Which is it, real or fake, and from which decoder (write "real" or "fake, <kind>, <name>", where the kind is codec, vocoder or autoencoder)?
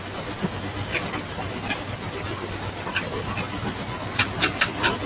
real